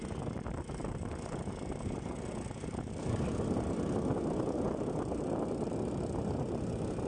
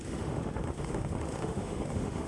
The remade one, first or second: second